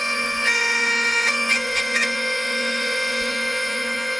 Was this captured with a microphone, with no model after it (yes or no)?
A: no